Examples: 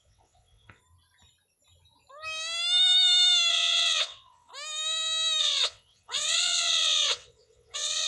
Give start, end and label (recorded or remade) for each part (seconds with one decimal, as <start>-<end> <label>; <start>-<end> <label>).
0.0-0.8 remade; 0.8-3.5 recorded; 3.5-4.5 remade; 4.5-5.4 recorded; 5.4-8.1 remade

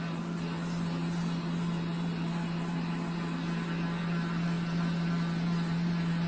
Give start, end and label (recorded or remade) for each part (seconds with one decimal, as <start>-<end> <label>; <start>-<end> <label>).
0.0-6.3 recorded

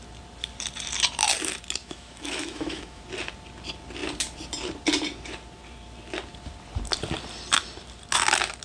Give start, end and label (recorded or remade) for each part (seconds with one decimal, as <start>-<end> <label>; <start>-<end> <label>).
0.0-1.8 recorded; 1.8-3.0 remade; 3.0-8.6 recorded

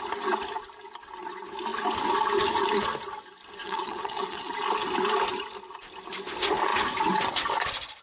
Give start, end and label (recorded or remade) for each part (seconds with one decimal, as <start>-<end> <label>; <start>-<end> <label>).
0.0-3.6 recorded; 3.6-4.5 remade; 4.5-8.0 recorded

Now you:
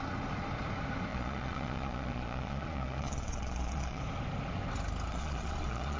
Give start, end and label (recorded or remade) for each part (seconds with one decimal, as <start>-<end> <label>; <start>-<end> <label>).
0.0-1.1 recorded; 1.1-4.0 remade; 4.0-5.1 recorded; 5.1-6.0 remade